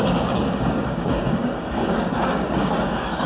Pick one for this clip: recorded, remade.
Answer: remade